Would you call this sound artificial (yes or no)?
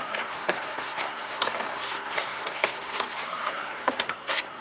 yes